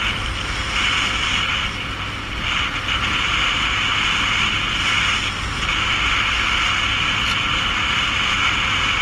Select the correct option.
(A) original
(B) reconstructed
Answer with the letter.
A